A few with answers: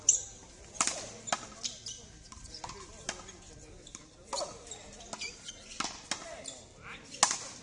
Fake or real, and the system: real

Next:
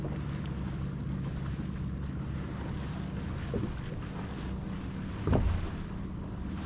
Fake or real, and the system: real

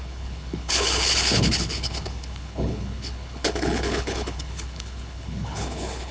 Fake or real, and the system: fake, codec, HILCodec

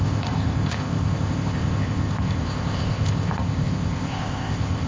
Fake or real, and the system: fake, codec, ZipCodec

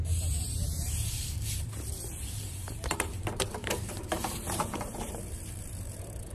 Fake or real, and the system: fake, vocoder, BigVGAN v2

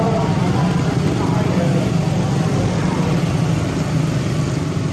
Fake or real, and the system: real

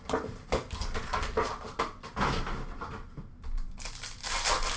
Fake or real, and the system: real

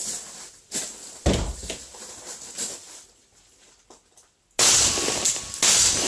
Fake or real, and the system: real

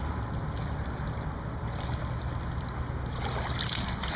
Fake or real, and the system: real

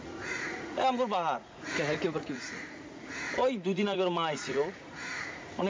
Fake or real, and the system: fake, vocoder, Vocos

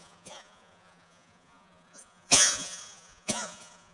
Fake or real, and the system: fake, vocoder, Vocos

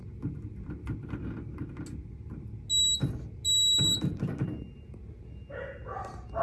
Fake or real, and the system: real